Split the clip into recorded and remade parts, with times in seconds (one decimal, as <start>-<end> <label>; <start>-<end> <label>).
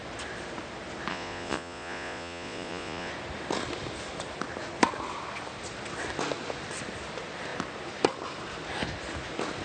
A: 0.0-1.1 recorded; 1.1-3.1 remade; 3.1-9.6 recorded